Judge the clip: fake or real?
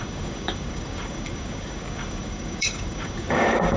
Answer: fake